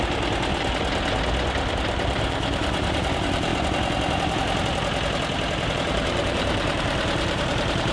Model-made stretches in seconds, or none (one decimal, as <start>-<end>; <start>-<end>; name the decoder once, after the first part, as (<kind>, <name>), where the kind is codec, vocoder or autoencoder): 0.0-0.5 (vocoder, BigVGAN v2); 1.7-3.5; 5.7-7.9